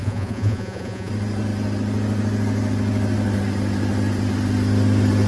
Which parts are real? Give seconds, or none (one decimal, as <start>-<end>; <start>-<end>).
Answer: 1.1-5.3